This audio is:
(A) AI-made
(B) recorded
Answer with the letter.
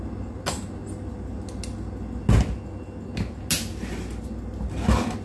B